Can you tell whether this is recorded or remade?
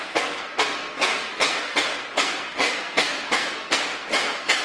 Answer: remade